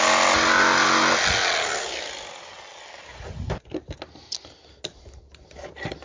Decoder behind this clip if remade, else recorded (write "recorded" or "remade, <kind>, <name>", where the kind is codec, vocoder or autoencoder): recorded